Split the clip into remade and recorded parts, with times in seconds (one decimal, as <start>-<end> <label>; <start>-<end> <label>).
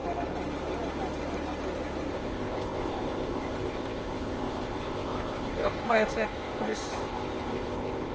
0.0-2.1 recorded; 2.1-8.1 remade